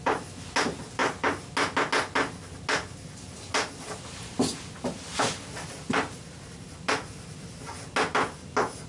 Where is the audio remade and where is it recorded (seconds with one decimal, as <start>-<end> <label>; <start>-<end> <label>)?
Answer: 0.0-8.9 recorded